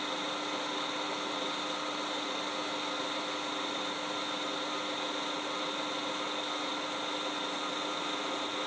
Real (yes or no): yes